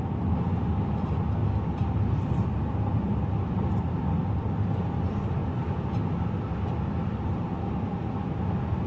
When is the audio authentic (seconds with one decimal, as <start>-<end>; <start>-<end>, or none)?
0.0-8.9

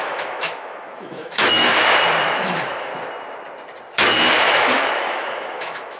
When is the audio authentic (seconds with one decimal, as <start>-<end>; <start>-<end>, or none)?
1.7-2.2; 2.9-4.3

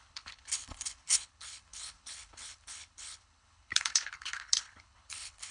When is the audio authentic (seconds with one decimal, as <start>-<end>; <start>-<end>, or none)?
none

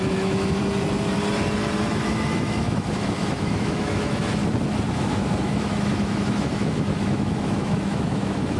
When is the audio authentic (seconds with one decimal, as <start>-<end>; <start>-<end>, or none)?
0.6-1.8; 4.4-4.9

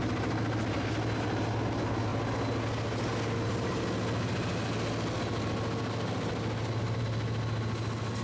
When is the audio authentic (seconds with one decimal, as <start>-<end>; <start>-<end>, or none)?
0.0-8.2

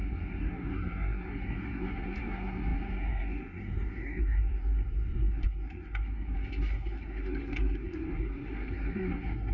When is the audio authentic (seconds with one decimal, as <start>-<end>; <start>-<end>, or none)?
none

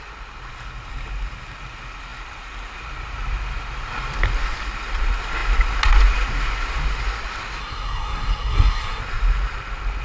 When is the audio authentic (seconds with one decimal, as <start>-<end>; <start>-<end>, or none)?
0.0-7.6; 9.0-10.0

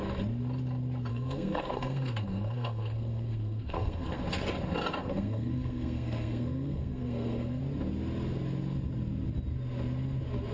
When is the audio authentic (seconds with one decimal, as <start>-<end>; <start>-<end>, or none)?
0.0-1.1; 4.2-5.0; 7.6-10.5